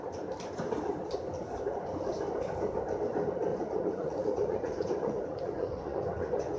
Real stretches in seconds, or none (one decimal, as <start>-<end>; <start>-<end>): 0.0-3.5